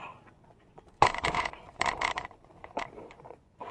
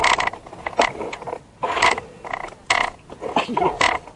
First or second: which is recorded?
second